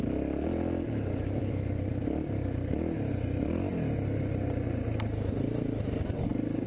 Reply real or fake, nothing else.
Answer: real